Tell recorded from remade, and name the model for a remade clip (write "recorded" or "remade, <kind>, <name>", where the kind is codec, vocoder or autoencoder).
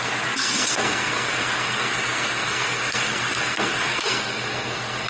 remade, codec, SNAC